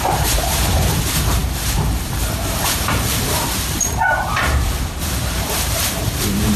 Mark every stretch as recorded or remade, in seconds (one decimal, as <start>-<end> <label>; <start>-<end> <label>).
0.0-6.6 remade